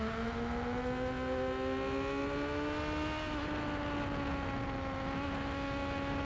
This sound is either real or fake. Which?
real